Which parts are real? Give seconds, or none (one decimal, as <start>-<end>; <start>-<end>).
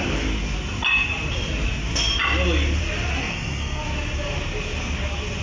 0.0-3.2; 3.8-5.4